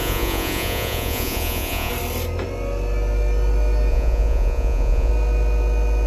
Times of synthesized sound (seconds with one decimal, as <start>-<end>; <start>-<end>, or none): 0.0-1.9; 3.9-5.1